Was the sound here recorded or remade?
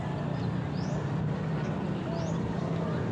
recorded